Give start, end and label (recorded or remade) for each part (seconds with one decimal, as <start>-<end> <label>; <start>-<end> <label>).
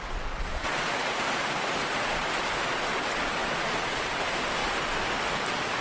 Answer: 0.0-0.5 recorded; 0.5-2.3 remade; 2.3-3.4 recorded; 3.4-4.0 remade; 4.0-5.8 recorded